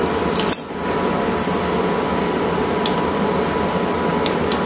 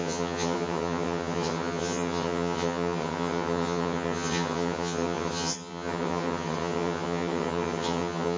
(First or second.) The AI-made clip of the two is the second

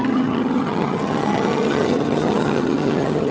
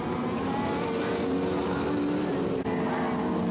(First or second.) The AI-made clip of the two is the first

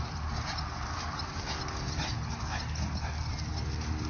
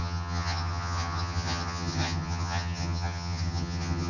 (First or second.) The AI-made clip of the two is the second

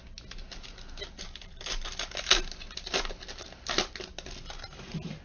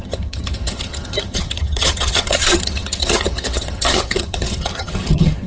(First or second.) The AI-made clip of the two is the second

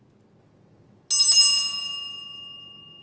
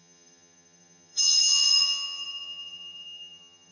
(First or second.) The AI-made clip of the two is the second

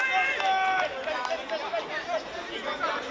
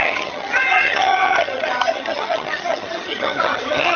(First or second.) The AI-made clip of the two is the second